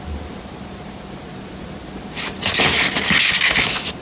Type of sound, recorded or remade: recorded